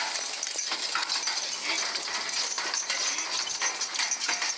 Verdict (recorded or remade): recorded